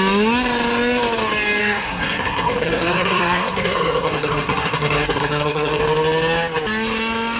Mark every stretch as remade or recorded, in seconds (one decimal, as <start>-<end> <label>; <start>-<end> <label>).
0.0-1.6 recorded; 1.6-5.8 remade; 5.8-7.4 recorded